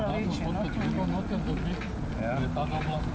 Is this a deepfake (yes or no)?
no